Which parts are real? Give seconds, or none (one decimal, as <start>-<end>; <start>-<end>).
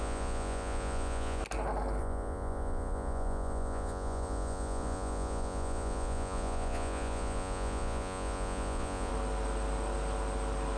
1.4-2.0; 9.1-10.8